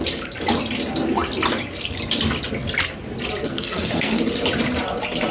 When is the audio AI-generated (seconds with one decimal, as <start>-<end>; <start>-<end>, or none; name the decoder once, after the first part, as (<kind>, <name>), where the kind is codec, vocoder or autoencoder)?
3.4-4.2 (codec, SNAC)

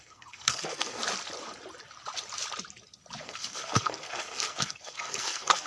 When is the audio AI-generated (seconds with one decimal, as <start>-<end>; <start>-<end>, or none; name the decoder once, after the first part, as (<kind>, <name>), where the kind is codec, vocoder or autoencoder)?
0.0-1.0 (codec, SNAC); 3.2-5.7